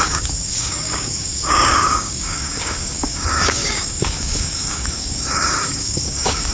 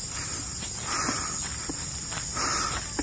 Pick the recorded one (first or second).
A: second